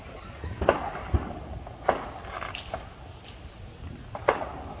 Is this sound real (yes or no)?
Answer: yes